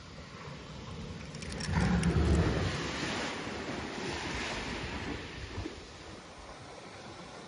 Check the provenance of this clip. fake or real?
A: real